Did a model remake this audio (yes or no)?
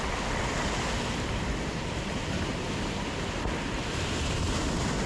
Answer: no